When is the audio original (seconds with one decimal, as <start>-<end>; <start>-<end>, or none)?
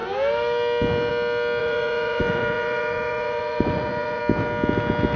0.0-1.6; 4.2-5.2